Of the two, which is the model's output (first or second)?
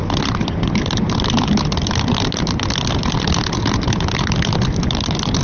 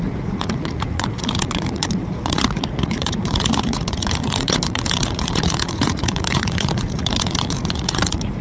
second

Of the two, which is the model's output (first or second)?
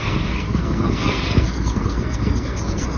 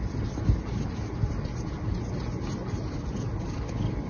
first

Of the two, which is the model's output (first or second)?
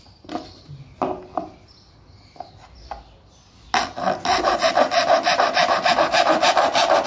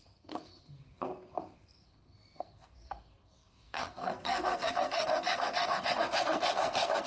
second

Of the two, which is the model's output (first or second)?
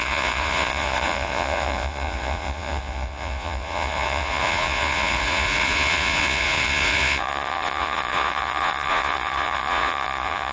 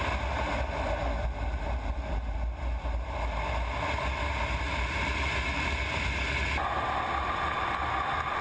first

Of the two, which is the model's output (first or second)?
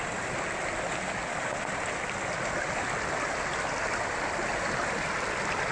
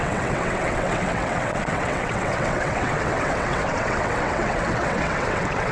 second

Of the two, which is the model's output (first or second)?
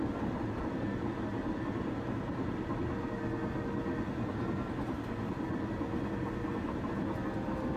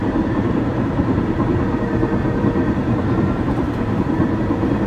second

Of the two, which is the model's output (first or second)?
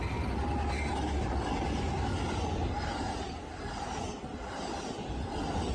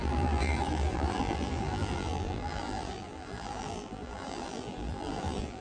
second